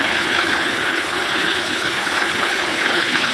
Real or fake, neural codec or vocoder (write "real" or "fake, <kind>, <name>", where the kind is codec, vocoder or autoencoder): fake, codec, HILCodec